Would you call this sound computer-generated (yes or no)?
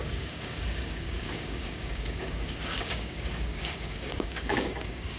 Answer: yes